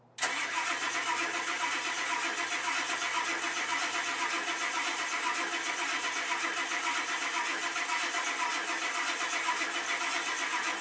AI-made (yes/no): no